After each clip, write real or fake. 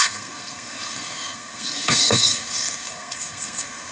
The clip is fake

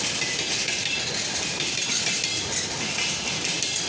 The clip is real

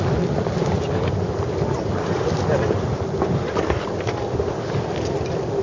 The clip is real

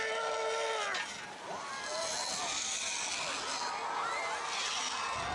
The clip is real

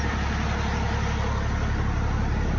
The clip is real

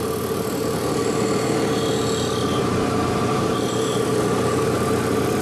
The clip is real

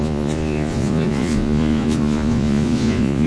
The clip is fake